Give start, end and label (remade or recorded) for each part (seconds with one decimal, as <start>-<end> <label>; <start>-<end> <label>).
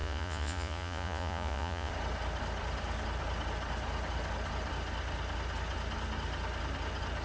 0.0-1.9 remade; 1.9-7.2 recorded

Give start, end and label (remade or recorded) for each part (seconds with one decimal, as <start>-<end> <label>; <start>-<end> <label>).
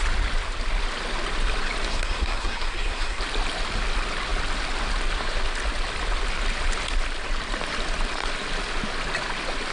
0.0-1.9 recorded; 1.9-3.2 remade; 3.2-9.7 recorded